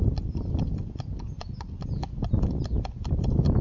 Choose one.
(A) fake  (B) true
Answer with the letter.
B